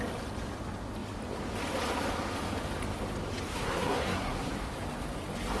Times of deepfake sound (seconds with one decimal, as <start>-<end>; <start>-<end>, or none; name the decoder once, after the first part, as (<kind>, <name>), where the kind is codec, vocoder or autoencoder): 3.5-4.5 (codec, SNAC)